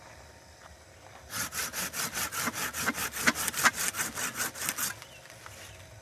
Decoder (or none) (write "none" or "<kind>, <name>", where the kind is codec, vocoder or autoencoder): none